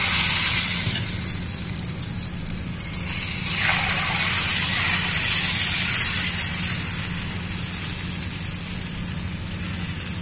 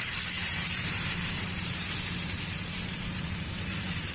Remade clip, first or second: second